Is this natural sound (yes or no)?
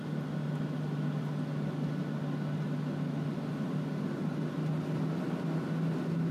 yes